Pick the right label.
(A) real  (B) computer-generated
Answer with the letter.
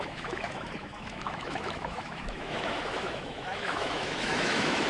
B